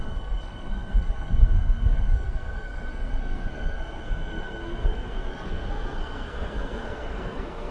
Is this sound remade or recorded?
remade